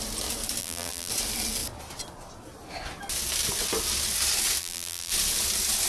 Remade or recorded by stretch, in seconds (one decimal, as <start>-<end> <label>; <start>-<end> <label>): 0.0-0.6 recorded; 0.6-1.1 remade; 1.1-4.6 recorded; 4.6-5.1 remade; 5.1-5.9 recorded